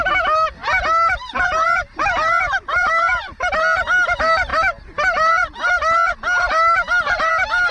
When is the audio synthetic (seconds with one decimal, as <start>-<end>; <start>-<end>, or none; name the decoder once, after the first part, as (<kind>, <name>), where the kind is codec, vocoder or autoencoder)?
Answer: none